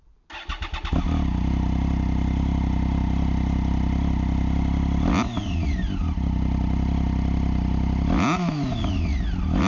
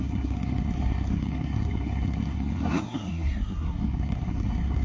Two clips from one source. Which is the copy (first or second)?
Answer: second